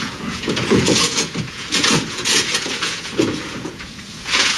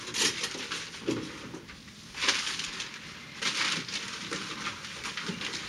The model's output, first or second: first